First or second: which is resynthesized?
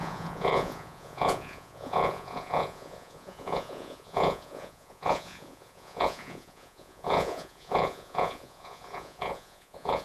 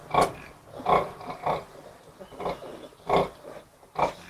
first